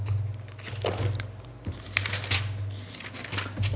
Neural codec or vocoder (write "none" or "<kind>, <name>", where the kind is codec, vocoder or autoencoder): none